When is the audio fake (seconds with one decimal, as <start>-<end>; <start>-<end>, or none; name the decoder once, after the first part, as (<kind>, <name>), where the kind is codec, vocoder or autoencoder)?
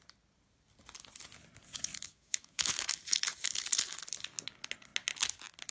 1.9-4.0 (autoencoder, DAC-VAE)